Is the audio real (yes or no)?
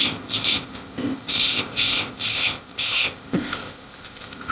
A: no